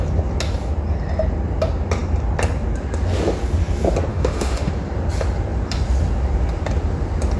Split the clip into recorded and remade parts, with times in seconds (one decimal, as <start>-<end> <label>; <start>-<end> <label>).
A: 0.0-4.1 recorded; 4.1-4.7 remade; 4.7-7.4 recorded